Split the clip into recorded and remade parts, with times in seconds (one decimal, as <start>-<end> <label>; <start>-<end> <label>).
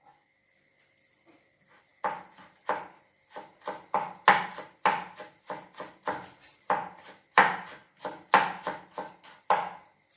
0.0-10.2 recorded